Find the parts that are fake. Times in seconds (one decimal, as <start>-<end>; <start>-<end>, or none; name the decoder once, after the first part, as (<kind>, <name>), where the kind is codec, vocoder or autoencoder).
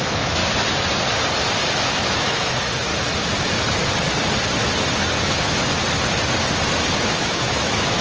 0.0-0.4 (autoencoder, DAC-VAE); 1.7-2.9; 5.2-5.7; 7.0-8.0